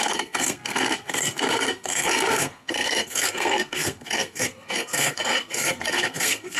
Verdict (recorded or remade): remade